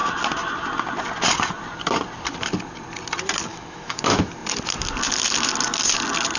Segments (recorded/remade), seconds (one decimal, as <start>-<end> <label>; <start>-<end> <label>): 0.0-3.5 recorded; 3.5-4.0 remade; 4.0-6.4 recorded